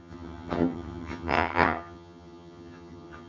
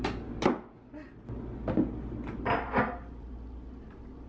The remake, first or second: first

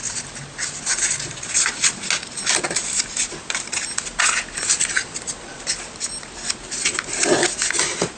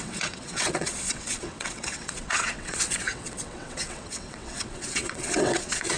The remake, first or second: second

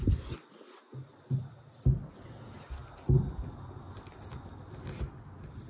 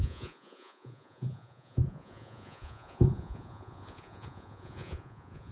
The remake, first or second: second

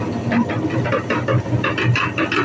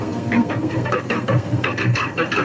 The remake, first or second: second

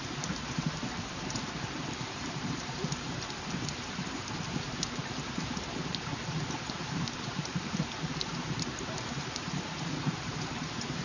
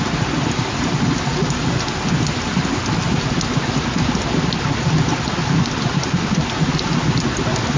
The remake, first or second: first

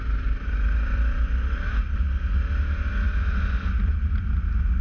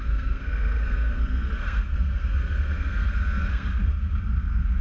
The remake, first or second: second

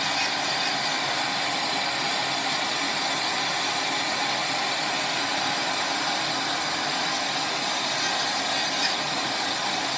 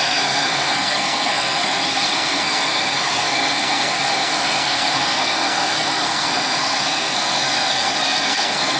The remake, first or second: second